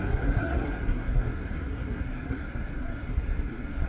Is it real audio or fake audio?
fake